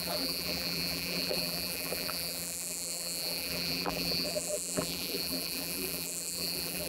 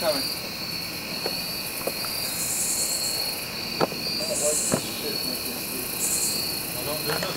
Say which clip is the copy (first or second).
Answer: first